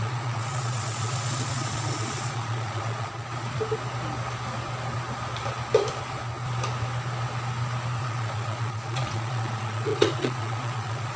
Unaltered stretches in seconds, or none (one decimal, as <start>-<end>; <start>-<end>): 3.6-8.0